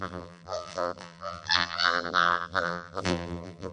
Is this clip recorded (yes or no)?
no